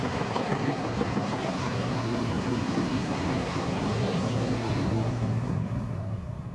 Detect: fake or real fake